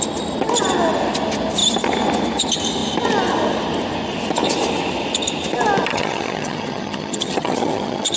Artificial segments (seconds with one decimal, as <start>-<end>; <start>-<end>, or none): 5.9-8.2

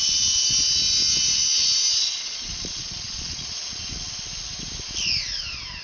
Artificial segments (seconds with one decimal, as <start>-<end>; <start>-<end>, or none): 2.0-3.6